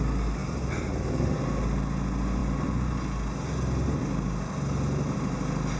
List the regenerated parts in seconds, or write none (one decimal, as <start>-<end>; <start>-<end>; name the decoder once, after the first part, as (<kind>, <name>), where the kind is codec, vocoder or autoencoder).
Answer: none